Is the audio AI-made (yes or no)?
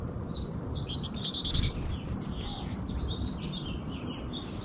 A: yes